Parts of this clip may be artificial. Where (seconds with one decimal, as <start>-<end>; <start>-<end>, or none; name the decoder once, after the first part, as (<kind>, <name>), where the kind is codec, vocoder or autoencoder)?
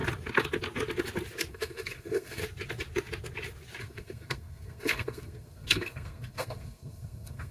1.5-2.4 (codec, SNAC); 3.8-7.5